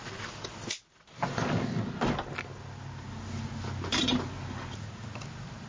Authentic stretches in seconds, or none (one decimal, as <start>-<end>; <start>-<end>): 0.0-5.7